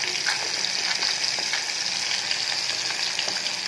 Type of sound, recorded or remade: recorded